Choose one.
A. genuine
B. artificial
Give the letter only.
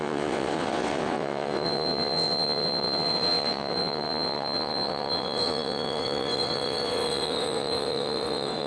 B